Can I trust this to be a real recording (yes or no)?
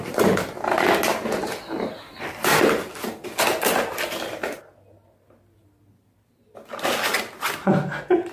yes